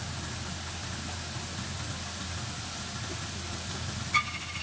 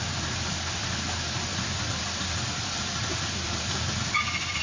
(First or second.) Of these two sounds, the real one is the first